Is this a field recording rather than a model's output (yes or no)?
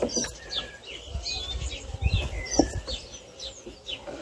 yes